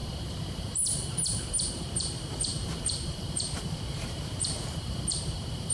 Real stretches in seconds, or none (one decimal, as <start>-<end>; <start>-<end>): 0.0-0.6